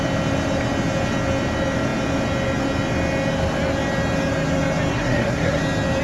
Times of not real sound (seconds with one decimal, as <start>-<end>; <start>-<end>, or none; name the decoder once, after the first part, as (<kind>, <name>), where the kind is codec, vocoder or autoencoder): 4.9-5.6 (codec, SNAC)